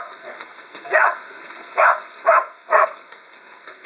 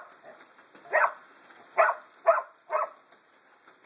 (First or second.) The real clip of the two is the second